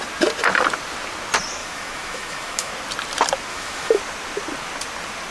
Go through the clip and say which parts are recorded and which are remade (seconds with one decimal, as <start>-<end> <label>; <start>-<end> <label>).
0.0-1.6 recorded; 1.6-2.7 remade; 2.7-3.5 recorded; 3.5-4.0 remade; 4.0-5.3 recorded